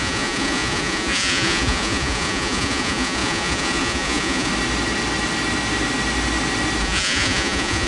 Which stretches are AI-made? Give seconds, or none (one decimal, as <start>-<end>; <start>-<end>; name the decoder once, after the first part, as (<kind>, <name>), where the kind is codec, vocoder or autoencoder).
0.0-4.5 (vocoder, Vocos); 6.8-7.9